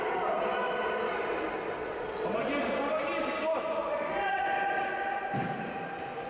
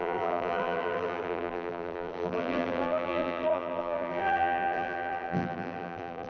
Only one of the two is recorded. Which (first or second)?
first